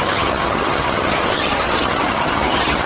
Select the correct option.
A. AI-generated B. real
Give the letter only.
A